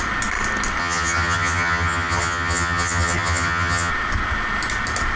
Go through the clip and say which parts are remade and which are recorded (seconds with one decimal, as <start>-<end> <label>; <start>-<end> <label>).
0.0-0.8 recorded; 0.8-3.9 remade; 3.9-5.2 recorded